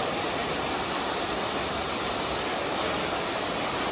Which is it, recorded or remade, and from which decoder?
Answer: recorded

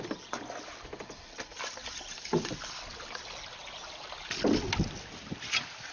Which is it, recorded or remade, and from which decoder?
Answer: recorded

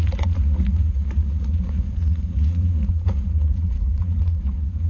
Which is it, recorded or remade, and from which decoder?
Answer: remade, vocoder, Vocos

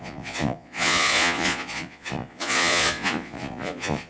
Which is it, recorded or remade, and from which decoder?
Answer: remade, vocoder, Vocos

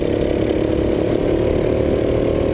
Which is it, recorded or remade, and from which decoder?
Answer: recorded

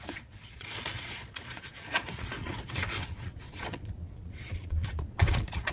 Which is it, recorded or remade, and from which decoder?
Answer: remade, vocoder, Vocos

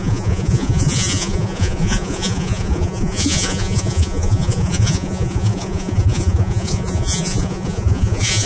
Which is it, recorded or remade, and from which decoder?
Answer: remade, vocoder, Vocos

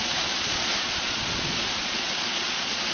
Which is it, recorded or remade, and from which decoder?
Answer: remade, vocoder, Vocos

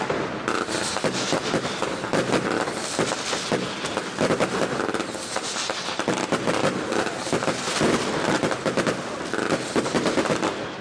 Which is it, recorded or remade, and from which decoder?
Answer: recorded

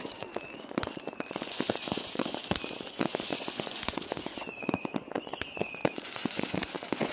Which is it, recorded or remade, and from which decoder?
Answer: remade, vocoder, Vocos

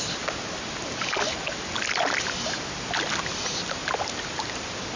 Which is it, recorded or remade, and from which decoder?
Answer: recorded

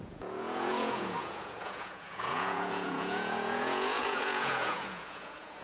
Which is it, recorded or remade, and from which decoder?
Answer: remade, vocoder, Vocos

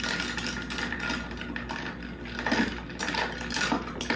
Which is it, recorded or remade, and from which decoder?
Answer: recorded